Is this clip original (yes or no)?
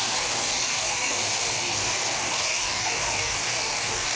no